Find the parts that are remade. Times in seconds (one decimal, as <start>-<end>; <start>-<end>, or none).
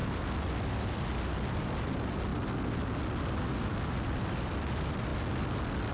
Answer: 1.5-2.3; 3.6-5.1